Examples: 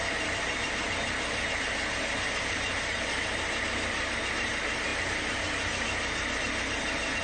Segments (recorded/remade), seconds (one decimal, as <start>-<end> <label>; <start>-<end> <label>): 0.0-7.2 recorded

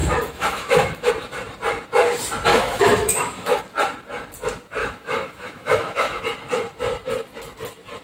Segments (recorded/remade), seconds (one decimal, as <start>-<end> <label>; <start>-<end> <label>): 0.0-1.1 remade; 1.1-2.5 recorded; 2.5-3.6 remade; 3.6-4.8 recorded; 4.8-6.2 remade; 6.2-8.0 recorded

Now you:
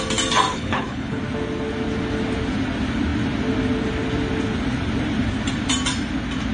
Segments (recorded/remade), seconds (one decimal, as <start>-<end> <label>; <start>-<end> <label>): 0.0-0.5 recorded; 0.5-1.2 remade; 1.2-6.5 recorded